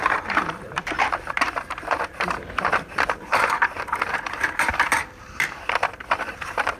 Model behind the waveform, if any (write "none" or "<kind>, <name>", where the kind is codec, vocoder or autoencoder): vocoder, BigVGAN v2